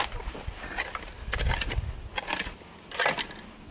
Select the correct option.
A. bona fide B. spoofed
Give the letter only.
A